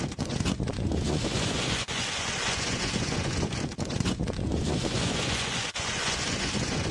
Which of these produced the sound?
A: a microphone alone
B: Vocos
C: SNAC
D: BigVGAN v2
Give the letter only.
B